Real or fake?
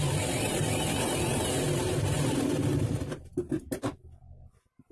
real